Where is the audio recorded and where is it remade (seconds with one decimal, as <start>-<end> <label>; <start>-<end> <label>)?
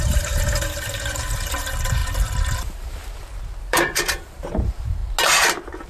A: 0.0-2.0 remade; 2.0-3.6 recorded; 3.6-5.0 remade; 5.0-5.9 recorded